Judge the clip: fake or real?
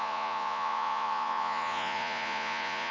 fake